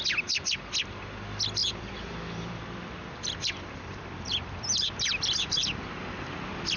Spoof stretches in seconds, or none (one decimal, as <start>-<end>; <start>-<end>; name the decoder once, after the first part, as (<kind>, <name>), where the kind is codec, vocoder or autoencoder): 1.6-5.5 (vocoder, BigVGAN v2)